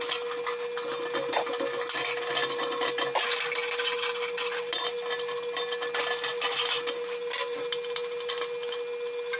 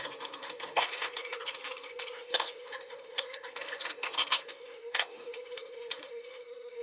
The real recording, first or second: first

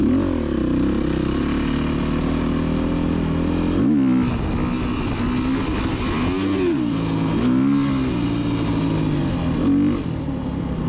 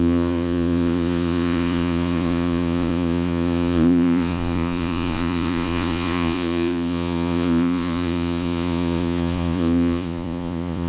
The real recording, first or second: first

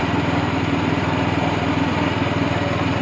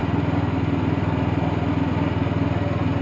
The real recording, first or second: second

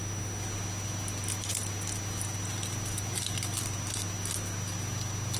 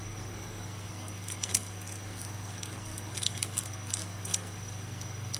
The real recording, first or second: first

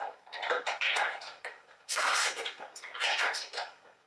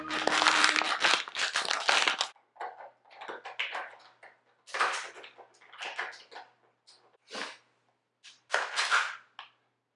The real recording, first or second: second